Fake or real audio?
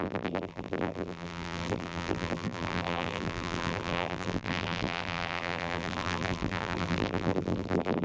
fake